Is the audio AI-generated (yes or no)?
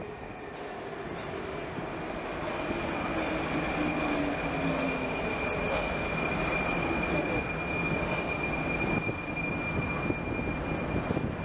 no